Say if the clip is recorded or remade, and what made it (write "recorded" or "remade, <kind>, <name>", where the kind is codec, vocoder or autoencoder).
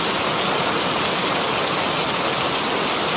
recorded